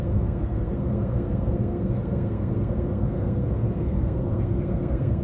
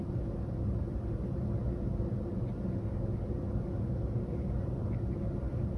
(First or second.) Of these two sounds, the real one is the second